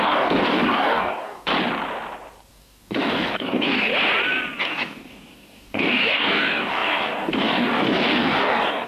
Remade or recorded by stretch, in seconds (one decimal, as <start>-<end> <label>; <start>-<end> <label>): 0.0-1.5 remade; 1.5-2.5 recorded; 2.5-3.9 remade; 3.9-4.6 recorded; 4.6-8.9 remade